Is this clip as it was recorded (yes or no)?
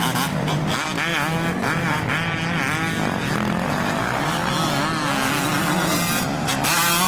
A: yes